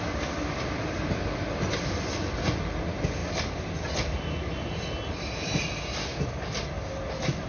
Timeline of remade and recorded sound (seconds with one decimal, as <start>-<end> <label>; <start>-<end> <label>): 0.0-7.5 recorded